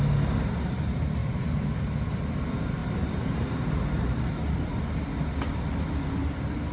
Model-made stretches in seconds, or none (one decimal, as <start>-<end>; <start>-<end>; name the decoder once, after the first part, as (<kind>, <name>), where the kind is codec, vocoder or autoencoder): 1.2-1.7 (vocoder, BigVGAN v2); 2.8-4.3